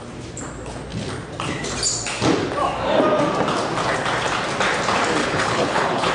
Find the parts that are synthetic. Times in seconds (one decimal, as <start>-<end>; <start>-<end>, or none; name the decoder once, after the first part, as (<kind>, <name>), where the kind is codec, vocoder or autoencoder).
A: 5.2-6.1 (codec, HILCodec)